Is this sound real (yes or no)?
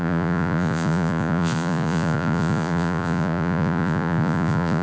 no